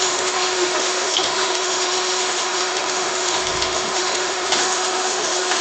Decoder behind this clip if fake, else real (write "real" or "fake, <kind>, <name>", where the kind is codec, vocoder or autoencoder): fake, autoencoder, DAC-VAE